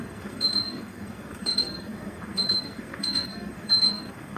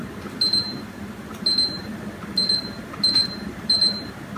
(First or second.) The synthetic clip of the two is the first